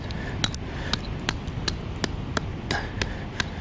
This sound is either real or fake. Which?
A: real